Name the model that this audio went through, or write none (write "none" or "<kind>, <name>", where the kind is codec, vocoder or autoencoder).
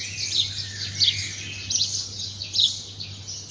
none